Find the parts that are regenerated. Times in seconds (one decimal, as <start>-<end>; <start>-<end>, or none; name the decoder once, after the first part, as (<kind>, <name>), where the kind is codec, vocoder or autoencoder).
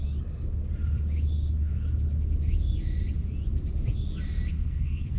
4.5-5.2 (codec, SNAC)